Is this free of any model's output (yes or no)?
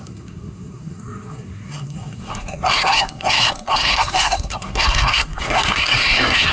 no